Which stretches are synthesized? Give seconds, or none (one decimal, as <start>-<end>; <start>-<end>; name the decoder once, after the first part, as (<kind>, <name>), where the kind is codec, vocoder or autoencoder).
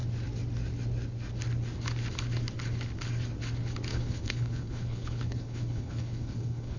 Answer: 3.9-6.8 (codec, HILCodec)